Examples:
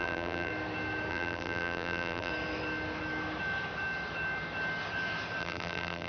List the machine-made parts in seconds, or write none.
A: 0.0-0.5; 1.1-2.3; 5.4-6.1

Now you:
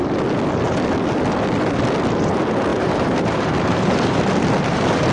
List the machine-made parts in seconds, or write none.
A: 2.7-5.1

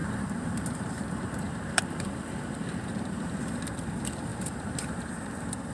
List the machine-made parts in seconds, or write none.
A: 0.0-3.4; 4.3-5.1

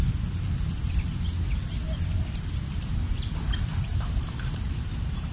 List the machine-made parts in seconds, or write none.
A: 3.9-5.3